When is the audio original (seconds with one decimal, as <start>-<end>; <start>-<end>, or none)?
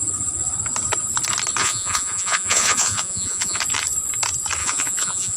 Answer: 0.0-1.6; 3.6-4.6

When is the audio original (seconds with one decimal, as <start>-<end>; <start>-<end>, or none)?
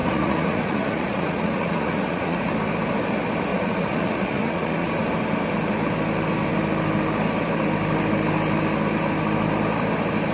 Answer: 2.5-3.5; 4.9-10.3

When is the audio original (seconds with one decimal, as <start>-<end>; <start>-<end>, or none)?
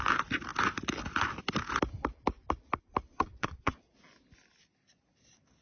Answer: 0.0-3.1; 3.9-5.6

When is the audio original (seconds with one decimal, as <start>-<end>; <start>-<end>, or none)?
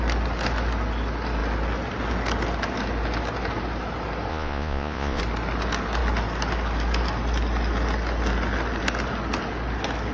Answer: 0.0-4.3; 5.2-10.1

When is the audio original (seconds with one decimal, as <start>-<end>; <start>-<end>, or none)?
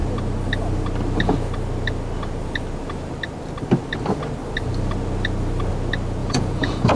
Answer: 0.0-6.2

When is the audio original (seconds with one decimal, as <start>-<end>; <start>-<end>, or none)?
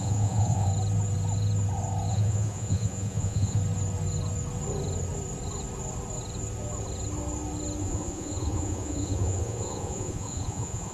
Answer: 0.7-2.1; 3.6-7.8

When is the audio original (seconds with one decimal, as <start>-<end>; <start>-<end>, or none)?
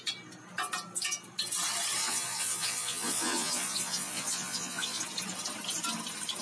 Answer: 0.0-2.0; 5.0-6.4